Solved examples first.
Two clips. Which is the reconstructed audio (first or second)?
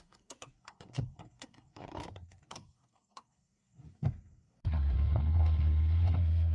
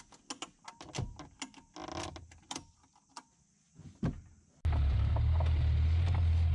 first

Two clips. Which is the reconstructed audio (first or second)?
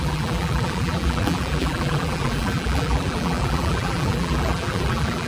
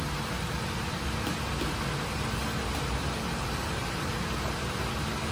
first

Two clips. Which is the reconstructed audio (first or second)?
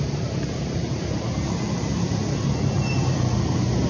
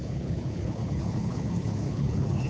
second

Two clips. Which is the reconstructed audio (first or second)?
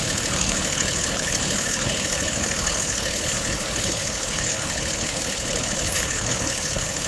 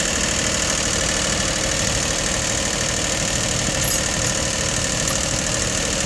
first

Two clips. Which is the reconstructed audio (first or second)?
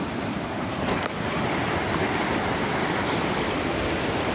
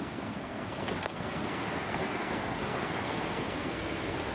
second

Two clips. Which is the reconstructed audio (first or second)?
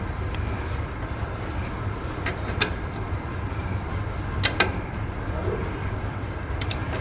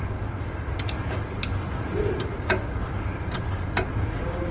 first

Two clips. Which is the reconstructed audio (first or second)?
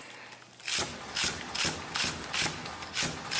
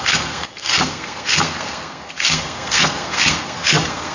second